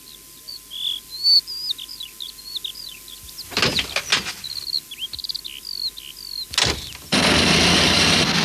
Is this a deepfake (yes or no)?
no